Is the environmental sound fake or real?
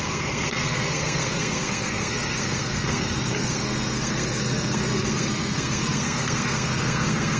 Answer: fake